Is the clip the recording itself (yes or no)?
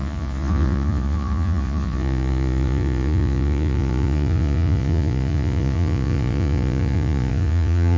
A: no